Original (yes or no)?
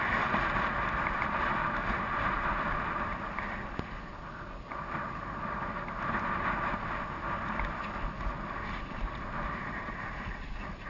yes